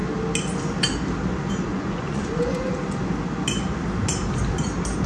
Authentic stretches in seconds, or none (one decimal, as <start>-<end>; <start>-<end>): 0.0-1.7; 2.7-5.1